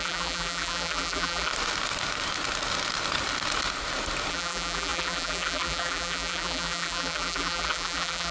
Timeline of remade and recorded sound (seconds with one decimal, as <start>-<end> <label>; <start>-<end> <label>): 0.0-1.5 remade; 1.5-4.3 recorded; 4.3-8.3 remade